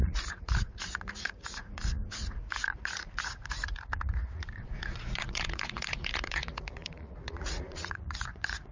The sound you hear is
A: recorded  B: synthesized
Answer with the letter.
B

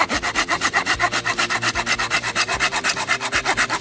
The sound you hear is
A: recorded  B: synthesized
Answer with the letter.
A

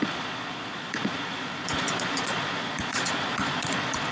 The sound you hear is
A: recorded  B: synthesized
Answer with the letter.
B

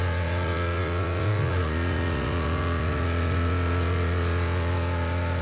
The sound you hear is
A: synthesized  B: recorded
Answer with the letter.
A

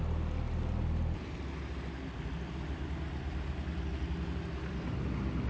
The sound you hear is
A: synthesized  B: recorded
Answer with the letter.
B